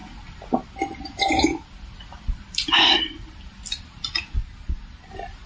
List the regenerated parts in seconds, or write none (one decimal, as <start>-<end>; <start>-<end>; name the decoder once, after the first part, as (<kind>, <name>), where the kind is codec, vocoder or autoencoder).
none

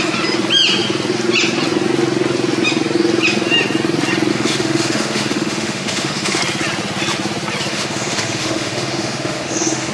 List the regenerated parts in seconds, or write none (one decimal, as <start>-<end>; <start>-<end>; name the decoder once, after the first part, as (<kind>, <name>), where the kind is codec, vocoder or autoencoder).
4.3-6.4 (autoencoder, DAC-VAE); 7.7-9.9

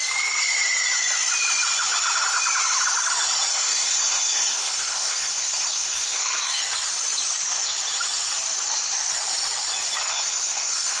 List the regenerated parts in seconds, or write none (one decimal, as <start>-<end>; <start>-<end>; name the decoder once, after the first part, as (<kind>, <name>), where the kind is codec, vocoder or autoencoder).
3.5-6.6 (codec, SNAC); 10.1-11.0

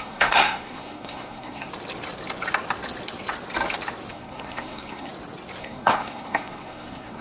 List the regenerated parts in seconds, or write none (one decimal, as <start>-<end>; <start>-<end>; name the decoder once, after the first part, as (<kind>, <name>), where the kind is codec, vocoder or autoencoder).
0.0-1.7 (codec, SNAC); 4.1-5.1; 5.6-7.2